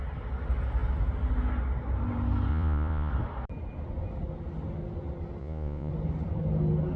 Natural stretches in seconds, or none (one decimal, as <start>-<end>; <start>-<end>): 0.0-2.5; 3.1-5.4; 5.9-7.0